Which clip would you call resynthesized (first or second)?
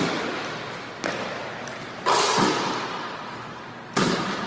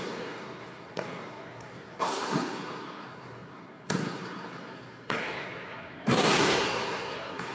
second